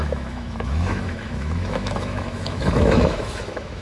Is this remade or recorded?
remade